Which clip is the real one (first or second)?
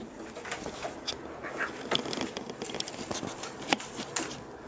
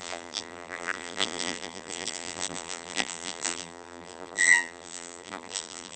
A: first